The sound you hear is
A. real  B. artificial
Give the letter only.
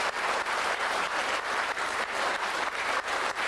B